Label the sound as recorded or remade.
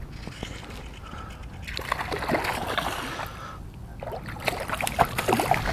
recorded